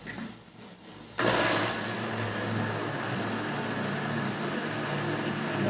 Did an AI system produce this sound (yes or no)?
no